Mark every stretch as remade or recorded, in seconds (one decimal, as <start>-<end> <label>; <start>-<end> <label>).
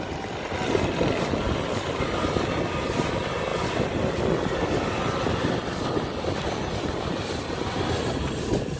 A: 0.0-8.8 recorded